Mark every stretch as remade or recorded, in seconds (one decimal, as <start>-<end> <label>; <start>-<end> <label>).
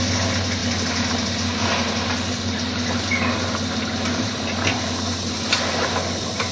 0.0-6.5 recorded